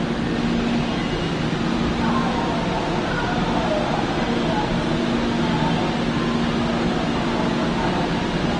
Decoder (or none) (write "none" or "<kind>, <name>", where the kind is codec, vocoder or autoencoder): none